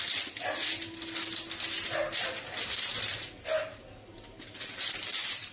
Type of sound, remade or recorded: recorded